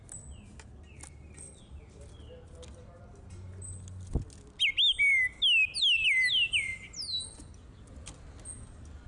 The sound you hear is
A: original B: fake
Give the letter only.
A